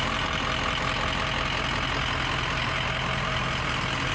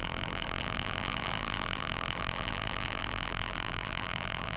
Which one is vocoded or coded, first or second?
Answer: second